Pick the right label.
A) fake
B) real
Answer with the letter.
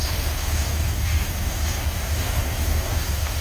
A